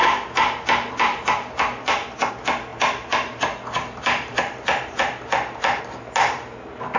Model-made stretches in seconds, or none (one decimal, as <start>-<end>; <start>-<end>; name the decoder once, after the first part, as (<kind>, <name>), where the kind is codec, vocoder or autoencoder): none